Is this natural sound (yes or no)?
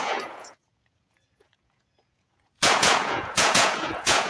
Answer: no